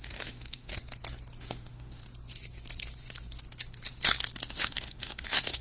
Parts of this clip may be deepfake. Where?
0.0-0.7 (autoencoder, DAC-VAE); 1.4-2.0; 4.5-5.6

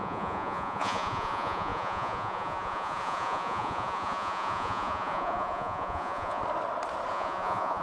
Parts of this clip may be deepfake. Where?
0.0-6.4 (vocoder, Vocos); 7.1-7.8

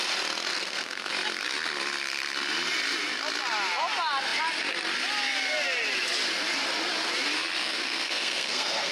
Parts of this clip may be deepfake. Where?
0.5-1.1 (codec, SNAC); 7.6-8.9

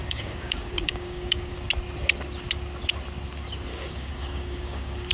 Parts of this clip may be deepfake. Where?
0.0-1.7 (codec, DAC); 3.7-5.1